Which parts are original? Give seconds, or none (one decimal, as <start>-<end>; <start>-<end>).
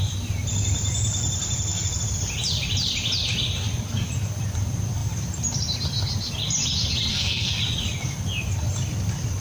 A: 0.0-7.1; 7.6-9.4